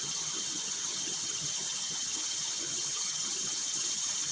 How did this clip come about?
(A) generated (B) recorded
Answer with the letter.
A